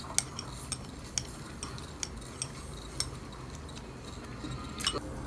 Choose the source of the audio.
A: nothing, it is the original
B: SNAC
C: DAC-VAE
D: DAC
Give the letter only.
A